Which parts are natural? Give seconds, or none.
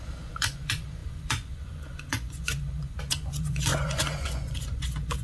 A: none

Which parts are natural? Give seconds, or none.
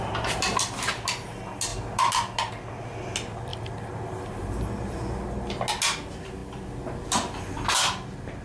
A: 0.0-8.4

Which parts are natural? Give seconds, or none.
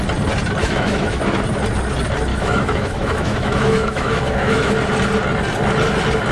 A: 0.0-0.6; 1.2-2.3; 4.7-6.3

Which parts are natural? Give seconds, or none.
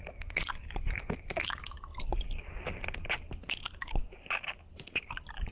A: 0.0-5.5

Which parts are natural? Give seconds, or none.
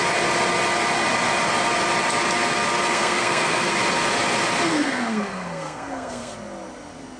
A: 0.0-2.9; 3.7-4.7; 6.3-7.2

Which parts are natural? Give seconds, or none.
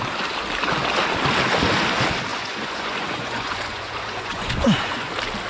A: 0.0-2.3; 5.1-5.5